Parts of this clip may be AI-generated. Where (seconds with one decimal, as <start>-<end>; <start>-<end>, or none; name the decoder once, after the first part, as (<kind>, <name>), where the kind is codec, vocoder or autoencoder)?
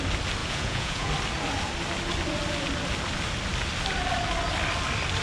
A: 0.4-1.1 (vocoder, Vocos)